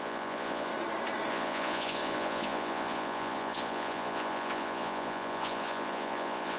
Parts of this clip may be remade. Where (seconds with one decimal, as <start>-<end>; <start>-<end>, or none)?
0.0-0.7; 1.3-6.6